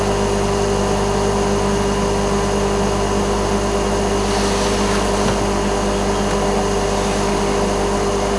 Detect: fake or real real